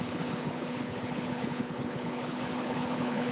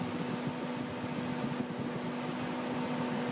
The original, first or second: second